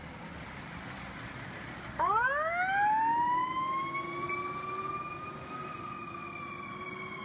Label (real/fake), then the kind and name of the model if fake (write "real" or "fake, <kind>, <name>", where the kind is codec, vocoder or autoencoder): real